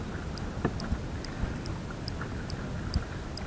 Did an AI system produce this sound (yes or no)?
no